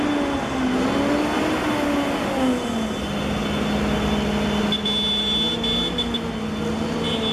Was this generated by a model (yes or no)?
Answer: no